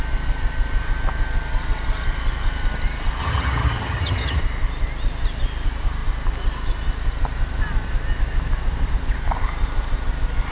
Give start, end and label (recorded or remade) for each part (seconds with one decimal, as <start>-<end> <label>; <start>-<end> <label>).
0.0-3.2 recorded; 3.2-4.4 remade; 4.4-10.5 recorded